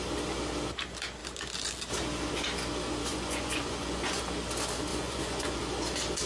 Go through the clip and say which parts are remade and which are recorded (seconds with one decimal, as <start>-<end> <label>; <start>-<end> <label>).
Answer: 0.0-3.1 recorded; 3.1-4.2 remade; 4.2-4.9 recorded; 4.9-5.6 remade; 5.6-6.3 recorded